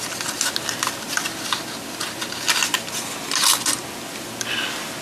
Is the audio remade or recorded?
recorded